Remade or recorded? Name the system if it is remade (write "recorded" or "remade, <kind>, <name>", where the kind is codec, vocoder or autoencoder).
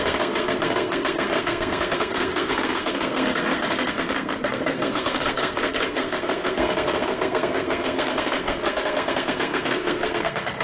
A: remade, codec, SNAC